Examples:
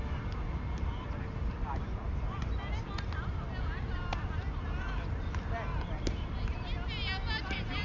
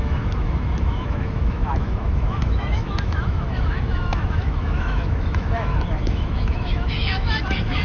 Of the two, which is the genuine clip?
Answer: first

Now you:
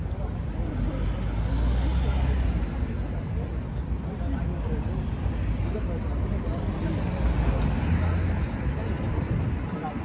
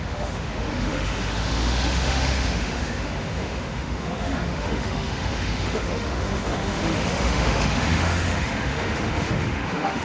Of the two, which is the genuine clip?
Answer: first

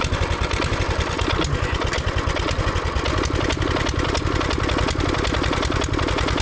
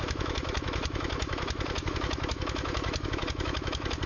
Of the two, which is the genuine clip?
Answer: first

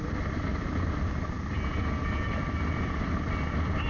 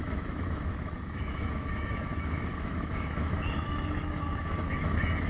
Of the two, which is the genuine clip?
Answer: first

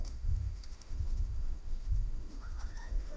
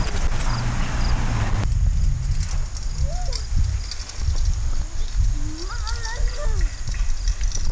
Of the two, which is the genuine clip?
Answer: second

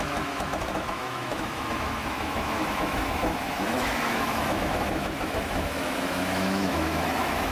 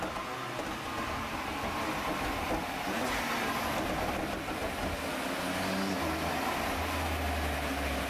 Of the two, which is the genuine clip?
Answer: second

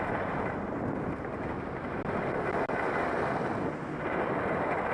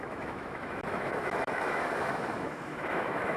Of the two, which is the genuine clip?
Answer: first